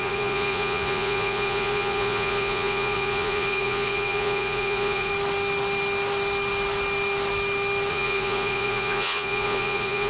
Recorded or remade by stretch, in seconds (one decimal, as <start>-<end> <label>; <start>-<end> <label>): 0.0-5.1 remade; 5.1-7.9 recorded; 7.9-10.1 remade